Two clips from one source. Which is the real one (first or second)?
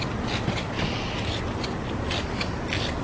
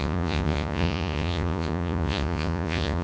first